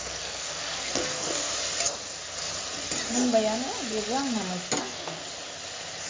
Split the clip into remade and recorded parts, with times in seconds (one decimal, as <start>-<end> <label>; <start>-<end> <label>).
0.0-1.5 remade; 1.5-4.8 recorded; 4.8-5.2 remade; 5.2-6.1 recorded